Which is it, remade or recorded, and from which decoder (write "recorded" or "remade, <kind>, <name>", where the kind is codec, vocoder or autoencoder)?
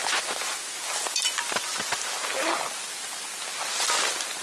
recorded